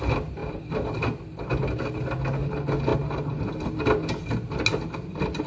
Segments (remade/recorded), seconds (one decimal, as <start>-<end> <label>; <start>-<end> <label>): 0.0-5.5 recorded